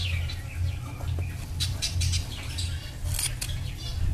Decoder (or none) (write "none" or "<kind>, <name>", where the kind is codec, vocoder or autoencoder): none